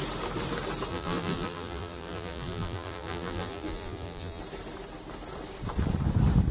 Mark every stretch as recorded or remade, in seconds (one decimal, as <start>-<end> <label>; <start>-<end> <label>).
0.0-0.9 recorded; 0.9-4.4 remade; 4.4-6.5 recorded